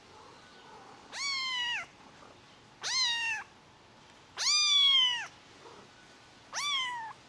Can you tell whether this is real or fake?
real